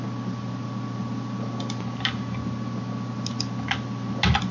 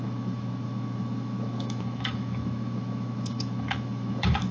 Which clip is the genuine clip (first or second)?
first